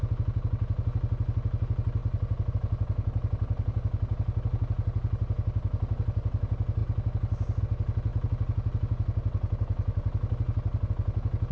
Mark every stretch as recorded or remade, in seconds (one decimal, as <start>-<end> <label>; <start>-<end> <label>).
0.0-11.5 recorded